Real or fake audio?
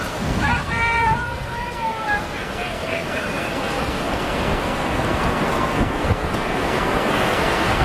fake